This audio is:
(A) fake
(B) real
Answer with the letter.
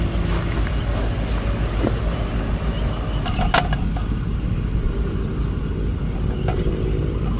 B